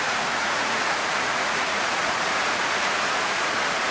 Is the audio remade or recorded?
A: remade